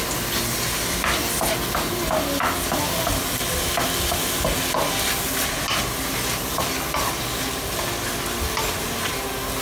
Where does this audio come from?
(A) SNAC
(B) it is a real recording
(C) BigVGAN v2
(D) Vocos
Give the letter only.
B